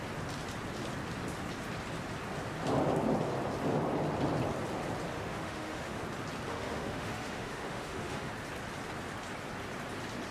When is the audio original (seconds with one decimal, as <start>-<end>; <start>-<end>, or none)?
0.0-5.1; 6.0-6.5; 8.3-10.3